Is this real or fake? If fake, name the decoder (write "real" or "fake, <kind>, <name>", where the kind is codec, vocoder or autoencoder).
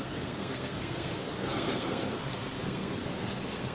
fake, codec, SNAC